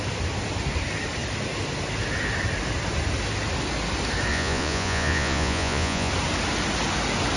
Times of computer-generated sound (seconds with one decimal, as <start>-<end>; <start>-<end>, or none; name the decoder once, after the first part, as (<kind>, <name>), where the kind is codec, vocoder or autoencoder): 4.3-6.1 (vocoder, Vocos)